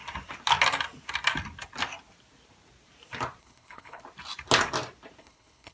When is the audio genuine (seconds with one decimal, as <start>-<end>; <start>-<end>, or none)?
0.0-3.4; 4.0-5.2